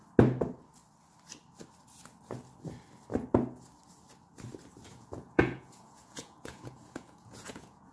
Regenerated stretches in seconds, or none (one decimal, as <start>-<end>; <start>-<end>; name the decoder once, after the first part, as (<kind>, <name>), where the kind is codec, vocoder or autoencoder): 4.9-7.9 (vocoder, Vocos)